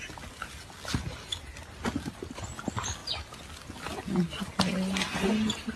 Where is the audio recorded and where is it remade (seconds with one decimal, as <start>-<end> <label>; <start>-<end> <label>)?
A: 0.0-5.8 recorded